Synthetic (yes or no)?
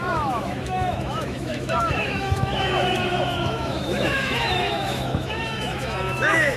yes